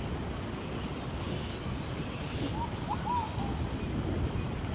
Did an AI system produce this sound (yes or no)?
no